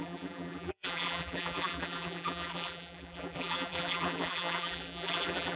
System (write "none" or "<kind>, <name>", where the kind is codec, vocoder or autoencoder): vocoder, BigVGAN v2